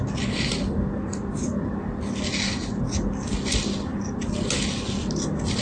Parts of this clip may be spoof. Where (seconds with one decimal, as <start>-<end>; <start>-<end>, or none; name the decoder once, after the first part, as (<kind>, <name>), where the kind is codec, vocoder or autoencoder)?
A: none